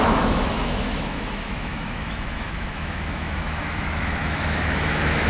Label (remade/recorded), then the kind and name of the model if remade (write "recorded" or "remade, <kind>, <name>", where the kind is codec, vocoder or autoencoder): remade, autoencoder, DAC-VAE